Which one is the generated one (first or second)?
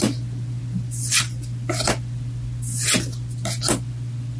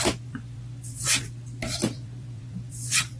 second